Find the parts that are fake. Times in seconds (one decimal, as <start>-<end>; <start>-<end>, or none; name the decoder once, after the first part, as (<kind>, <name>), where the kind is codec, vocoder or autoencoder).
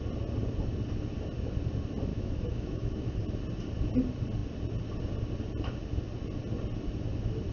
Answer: 2.1-3.2 (autoencoder, DAC-VAE)